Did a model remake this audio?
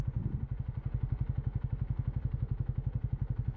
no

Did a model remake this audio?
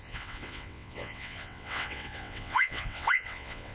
yes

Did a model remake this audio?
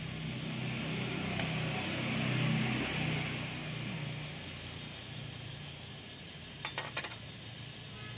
no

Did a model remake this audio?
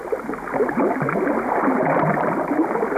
no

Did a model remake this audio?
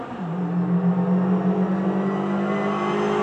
no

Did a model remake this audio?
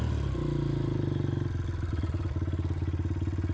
no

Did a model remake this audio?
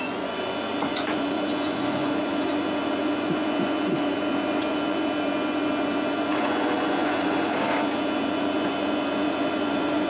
yes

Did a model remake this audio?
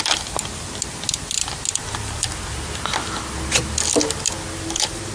no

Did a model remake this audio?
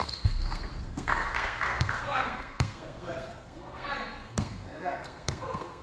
yes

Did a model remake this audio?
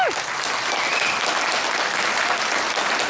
no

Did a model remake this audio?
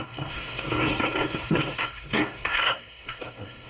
yes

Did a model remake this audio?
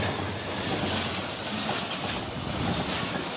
no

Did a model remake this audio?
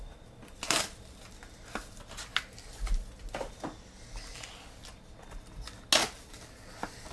no